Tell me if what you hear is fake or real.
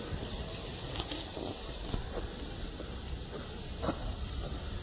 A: real